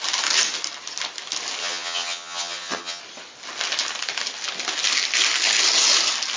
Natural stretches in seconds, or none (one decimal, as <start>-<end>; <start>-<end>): 0.0-1.6; 3.0-6.4